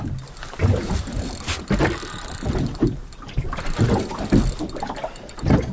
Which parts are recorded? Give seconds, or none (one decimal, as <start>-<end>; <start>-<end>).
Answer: 0.0-5.7